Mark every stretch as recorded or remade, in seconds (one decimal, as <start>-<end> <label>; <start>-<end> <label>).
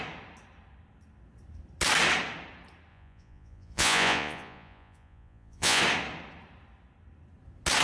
0.0-2.9 recorded; 2.9-5.8 remade; 5.8-7.8 recorded